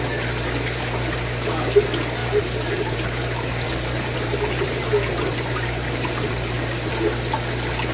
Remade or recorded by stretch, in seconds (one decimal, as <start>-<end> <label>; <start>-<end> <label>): 0.0-2.2 recorded; 2.2-6.9 remade; 6.9-7.9 recorded